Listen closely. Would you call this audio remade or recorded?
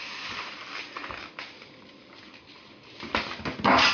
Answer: recorded